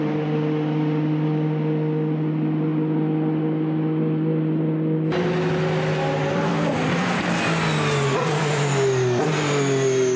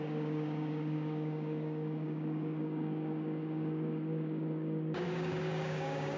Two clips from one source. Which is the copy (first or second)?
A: second